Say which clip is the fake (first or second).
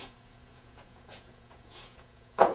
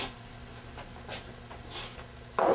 first